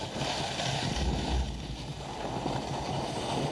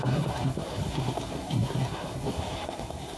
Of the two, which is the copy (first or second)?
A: second